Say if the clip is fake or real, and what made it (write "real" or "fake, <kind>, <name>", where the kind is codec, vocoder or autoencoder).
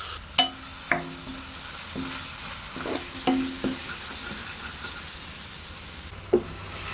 real